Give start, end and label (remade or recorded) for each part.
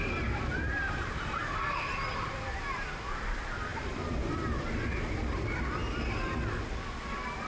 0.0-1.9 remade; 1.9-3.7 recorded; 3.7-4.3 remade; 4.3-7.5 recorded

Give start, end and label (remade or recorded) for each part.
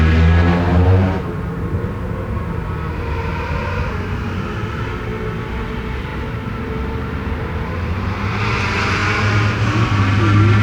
0.0-0.7 recorded; 0.7-2.5 remade; 2.5-6.1 recorded; 6.1-8.4 remade; 8.4-10.6 recorded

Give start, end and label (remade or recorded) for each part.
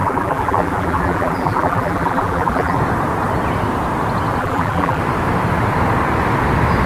0.0-2.8 remade; 2.8-4.4 recorded; 4.4-5.0 remade; 5.0-6.9 recorded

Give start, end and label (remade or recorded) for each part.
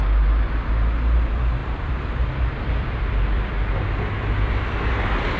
0.0-1.6 recorded; 1.6-4.8 remade; 4.8-5.4 recorded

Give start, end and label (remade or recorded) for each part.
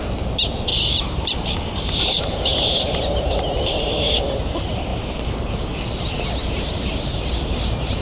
0.0-0.7 recorded; 0.7-4.2 remade; 4.2-4.9 recorded; 4.9-5.4 remade; 5.4-6.4 recorded; 6.4-7.2 remade; 7.2-8.0 recorded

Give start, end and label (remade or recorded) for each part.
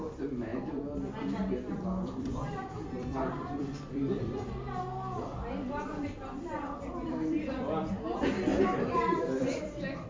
0.0-0.5 recorded; 0.5-4.5 remade; 4.5-6.0 recorded; 6.0-7.9 remade; 7.9-8.5 recorded; 8.5-10.1 remade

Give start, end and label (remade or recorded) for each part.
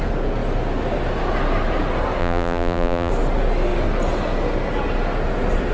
0.0-2.2 recorded; 2.2-3.1 remade; 3.1-5.7 recorded